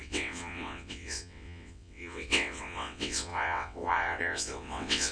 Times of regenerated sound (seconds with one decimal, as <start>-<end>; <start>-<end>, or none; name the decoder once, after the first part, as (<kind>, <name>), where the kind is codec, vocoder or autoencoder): 0.0-5.1 (vocoder, WaveNeXt)